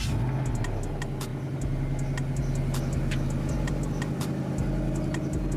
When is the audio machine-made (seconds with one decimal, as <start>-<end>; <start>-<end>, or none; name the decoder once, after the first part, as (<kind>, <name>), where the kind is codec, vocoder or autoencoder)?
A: none